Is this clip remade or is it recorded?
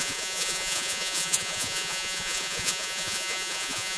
remade